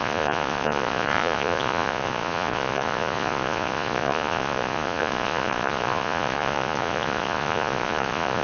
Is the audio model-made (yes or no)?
yes